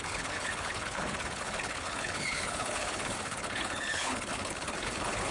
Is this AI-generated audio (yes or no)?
yes